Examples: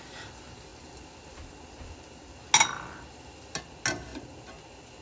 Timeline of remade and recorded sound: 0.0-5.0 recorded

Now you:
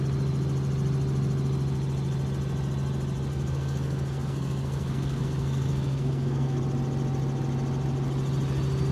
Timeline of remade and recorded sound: 0.0-3.3 recorded; 3.3-6.6 remade; 6.6-8.9 recorded

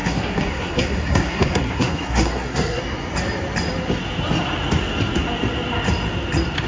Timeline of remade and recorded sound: 0.0-2.8 remade; 2.8-6.7 recorded

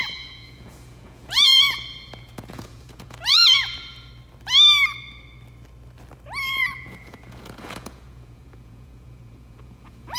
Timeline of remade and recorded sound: 0.0-4.1 remade; 4.1-6.5 recorded; 6.5-10.2 remade